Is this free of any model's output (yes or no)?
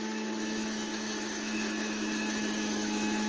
no